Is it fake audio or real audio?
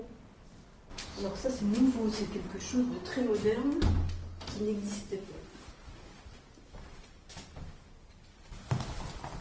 real